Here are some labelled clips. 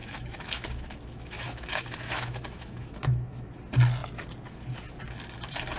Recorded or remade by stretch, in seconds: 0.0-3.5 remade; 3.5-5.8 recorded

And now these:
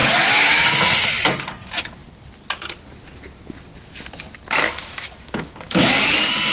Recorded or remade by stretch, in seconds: 0.0-0.7 remade; 0.7-4.6 recorded; 4.6-5.9 remade; 5.9-6.5 recorded

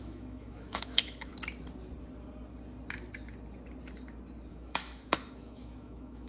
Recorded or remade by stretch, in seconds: 0.0-1.3 remade; 1.3-4.5 recorded; 4.5-6.3 remade

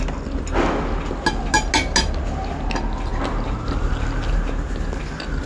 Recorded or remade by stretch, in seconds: 0.0-5.5 recorded